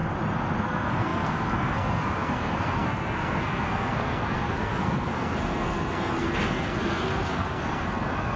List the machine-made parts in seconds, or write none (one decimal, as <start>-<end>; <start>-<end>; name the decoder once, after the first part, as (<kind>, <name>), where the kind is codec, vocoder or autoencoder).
0.6-8.4 (codec, SNAC)